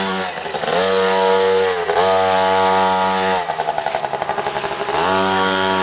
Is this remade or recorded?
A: recorded